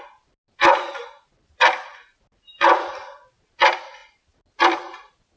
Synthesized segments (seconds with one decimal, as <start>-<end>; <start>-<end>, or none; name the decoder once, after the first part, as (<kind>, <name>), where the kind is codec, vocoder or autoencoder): none